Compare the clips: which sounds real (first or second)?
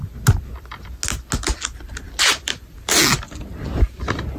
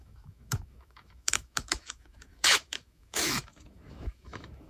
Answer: first